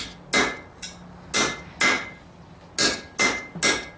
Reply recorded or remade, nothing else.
recorded